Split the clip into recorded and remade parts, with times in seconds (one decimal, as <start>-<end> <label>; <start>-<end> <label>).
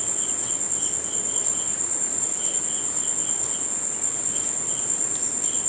0.0-1.7 recorded; 1.7-2.6 remade; 2.6-5.7 recorded